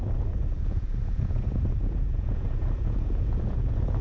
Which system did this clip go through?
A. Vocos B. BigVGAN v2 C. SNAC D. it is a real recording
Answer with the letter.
A